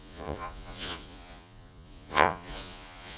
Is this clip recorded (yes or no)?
no